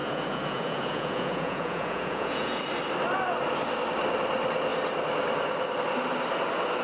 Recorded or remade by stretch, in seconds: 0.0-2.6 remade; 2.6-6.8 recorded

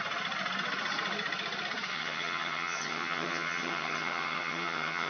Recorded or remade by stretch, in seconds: 0.0-1.9 recorded; 1.9-5.1 remade

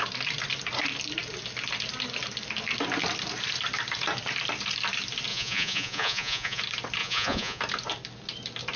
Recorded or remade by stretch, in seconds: 0.0-5.3 recorded; 5.3-6.6 remade; 6.6-7.0 recorded; 7.0-7.6 remade; 7.6-8.8 recorded

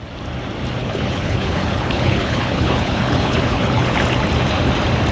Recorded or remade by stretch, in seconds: 0.0-0.8 recorded; 0.8-3.9 remade; 3.9-5.1 recorded

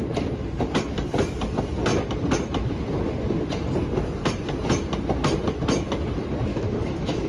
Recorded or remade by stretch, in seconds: 0.0-6.5 recorded; 6.5-7.3 remade

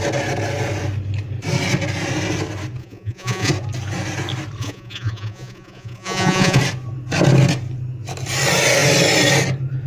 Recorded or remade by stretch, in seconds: 0.0-2.8 recorded; 2.8-3.5 remade; 3.5-4.6 recorded; 4.6-6.6 remade; 6.6-9.9 recorded

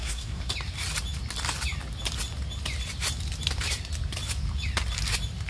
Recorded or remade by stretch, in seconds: 0.0-0.5 remade; 0.5-5.5 recorded

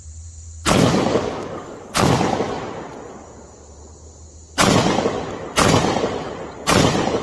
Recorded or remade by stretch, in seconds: 0.0-1.1 recorded; 1.1-2.0 remade; 2.0-7.2 recorded